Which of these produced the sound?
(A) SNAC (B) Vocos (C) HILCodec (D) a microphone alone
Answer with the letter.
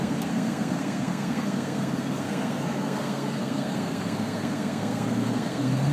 A